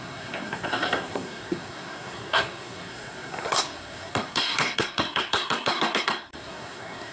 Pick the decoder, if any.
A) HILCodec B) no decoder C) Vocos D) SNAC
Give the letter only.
D